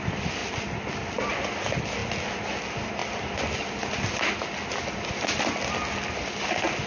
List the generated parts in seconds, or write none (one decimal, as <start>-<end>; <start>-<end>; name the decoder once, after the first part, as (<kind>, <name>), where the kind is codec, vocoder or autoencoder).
none